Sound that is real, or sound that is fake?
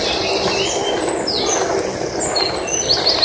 real